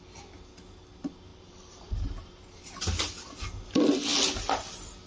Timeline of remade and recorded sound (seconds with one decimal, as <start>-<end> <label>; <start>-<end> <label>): 0.0-1.3 recorded; 1.3-3.4 remade; 3.4-5.1 recorded